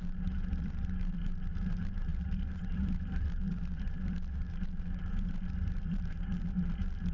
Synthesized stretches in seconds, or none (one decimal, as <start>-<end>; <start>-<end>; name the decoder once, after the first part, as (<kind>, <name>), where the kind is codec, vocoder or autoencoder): 0.0-7.1 (vocoder, BigVGAN v2)